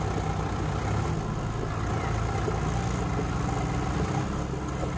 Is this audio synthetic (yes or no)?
no